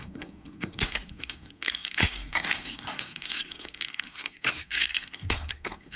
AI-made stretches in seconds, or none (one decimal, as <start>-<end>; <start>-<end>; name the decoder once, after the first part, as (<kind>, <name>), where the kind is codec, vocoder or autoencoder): 0.0-6.0 (codec, SNAC)